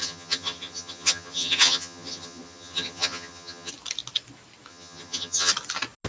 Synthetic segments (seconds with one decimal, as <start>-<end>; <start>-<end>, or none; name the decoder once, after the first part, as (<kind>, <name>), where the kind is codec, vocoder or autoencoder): 0.0-3.7 (vocoder, HiFi-GAN); 4.7-5.5